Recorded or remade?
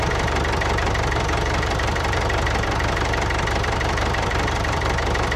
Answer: remade